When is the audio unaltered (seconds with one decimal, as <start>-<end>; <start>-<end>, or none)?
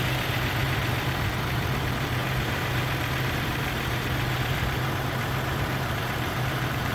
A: none